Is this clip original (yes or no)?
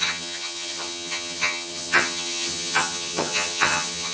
no